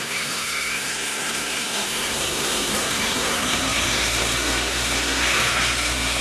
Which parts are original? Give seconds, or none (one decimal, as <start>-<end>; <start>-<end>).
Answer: none